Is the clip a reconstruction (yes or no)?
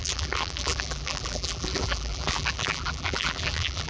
yes